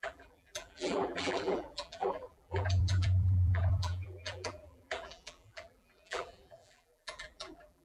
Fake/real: fake